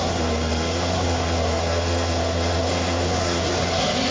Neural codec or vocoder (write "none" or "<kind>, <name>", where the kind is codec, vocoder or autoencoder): codec, SNAC